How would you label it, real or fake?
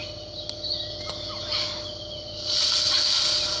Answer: real